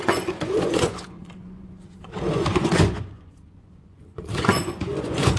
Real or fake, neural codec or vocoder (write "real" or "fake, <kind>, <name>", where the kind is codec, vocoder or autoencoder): fake, vocoder, Vocos